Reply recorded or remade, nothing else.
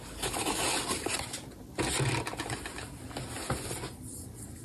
recorded